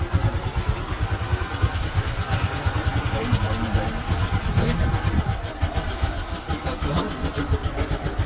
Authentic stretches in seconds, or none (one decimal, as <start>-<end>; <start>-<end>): 0.0-8.3

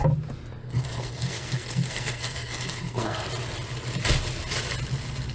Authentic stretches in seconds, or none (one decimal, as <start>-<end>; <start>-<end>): 0.0-0.6; 3.3-5.3

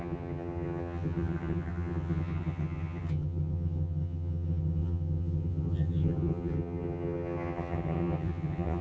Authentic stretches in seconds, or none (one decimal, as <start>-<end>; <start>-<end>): none

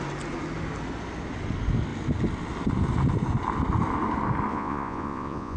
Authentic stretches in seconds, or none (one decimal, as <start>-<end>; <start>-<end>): 0.0-4.5

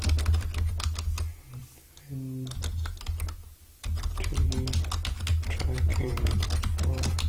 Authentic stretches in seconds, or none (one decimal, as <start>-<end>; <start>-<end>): 0.0-5.9; 6.4-7.3

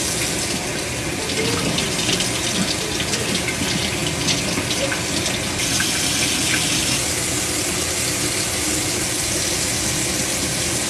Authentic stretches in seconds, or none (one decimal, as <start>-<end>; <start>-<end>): 0.0-10.9

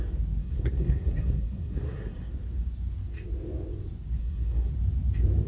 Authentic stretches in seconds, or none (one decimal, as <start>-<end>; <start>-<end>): 0.0-0.4; 2.3-4.2; 4.7-5.5

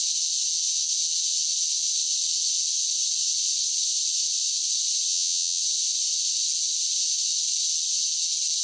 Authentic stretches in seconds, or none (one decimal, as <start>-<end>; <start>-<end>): 0.0-5.1; 5.6-8.6